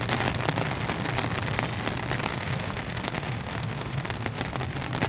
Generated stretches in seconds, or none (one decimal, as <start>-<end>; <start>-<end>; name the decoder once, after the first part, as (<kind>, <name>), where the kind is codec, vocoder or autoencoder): 2.3-4.4 (autoencoder, DAC-VAE)